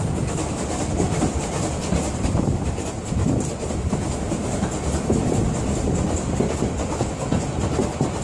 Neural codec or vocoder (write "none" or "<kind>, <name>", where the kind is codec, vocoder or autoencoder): none